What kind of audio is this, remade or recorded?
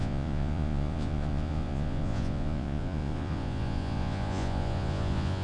remade